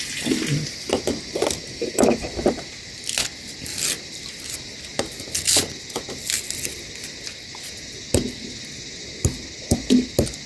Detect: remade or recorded recorded